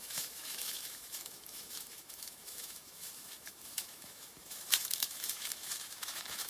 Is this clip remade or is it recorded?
remade